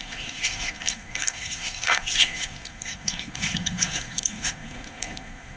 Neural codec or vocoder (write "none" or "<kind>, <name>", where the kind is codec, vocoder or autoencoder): codec, SNAC